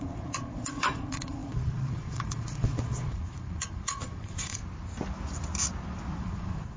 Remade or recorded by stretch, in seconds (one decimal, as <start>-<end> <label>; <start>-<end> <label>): 0.0-4.6 remade; 4.6-6.2 recorded; 6.2-6.8 remade